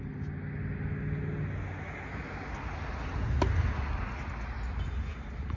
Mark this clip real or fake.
real